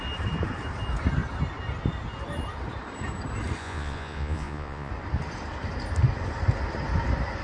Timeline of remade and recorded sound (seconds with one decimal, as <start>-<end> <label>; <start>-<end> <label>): 0.0-3.6 recorded; 3.6-4.9 remade; 4.9-7.4 recorded